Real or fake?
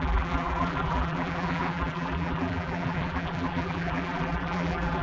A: fake